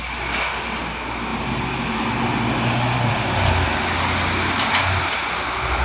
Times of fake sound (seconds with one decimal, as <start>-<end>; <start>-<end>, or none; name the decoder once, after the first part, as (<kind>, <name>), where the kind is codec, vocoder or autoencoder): none